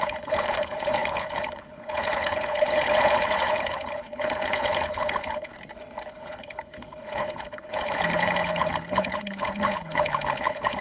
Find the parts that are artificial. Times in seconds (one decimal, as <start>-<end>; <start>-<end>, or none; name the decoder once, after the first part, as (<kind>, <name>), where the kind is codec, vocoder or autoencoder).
0.0-5.5 (codec, HILCodec); 6.1-10.8